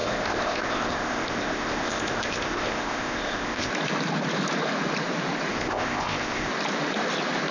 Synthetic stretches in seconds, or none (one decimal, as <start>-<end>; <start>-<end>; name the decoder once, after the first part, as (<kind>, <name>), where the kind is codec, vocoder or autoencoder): 0.0-3.7 (codec, ZipCodec); 5.5-6.5